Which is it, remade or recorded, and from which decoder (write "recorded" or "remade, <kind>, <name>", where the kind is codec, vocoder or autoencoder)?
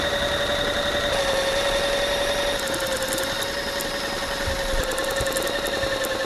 recorded